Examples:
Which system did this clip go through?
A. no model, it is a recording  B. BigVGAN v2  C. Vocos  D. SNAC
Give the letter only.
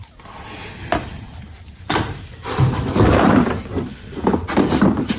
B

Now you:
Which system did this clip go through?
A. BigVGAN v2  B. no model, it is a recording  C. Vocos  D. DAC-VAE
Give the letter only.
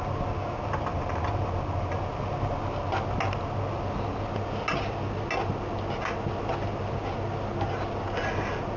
B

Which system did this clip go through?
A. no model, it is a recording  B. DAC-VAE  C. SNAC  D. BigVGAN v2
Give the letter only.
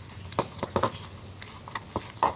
A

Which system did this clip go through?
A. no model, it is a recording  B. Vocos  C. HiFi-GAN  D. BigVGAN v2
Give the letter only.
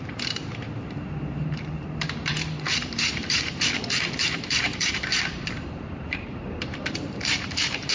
D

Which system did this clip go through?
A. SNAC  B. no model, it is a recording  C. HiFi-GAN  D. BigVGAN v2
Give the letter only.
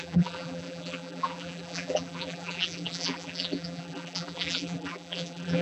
D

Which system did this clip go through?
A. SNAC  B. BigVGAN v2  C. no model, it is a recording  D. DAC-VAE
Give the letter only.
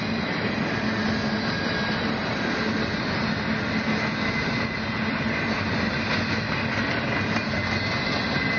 C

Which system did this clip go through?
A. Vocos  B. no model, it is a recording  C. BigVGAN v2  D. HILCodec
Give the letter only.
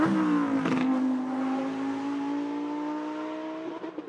B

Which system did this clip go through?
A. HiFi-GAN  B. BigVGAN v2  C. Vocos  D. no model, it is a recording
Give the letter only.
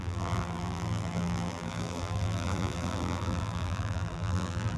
B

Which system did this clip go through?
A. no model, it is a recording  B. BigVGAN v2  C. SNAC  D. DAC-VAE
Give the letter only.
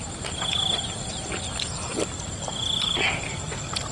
A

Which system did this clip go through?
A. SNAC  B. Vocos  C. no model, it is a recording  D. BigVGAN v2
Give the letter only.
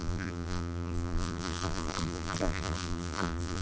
D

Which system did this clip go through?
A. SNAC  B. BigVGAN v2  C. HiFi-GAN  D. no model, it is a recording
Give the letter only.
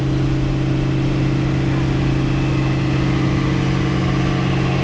D